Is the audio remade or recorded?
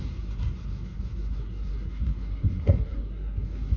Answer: remade